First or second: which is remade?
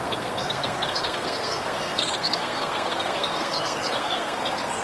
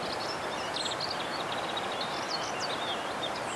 first